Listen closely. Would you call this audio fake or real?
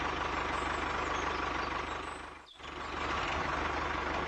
real